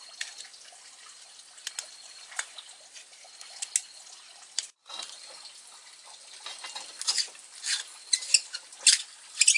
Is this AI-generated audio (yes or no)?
no